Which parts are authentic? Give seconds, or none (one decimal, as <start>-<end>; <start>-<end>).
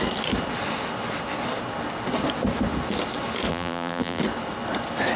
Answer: 0.0-3.5; 4.2-5.2